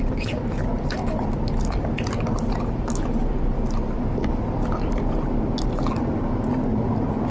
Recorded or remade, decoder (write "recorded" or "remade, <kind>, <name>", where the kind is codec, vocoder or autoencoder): recorded